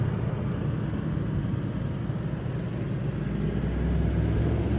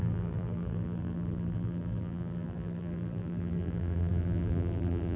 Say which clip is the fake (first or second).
second